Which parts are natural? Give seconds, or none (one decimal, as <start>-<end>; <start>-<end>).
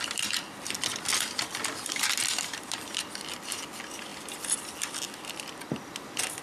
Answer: 0.0-6.4